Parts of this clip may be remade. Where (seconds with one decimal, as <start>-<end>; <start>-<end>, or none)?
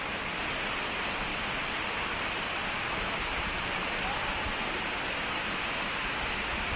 1.3-2.2; 3.3-4.0